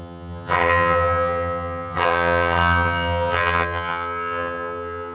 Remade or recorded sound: remade